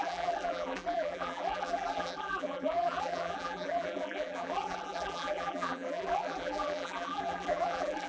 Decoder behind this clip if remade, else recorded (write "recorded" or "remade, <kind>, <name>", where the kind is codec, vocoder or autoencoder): remade, vocoder, BigVGAN v2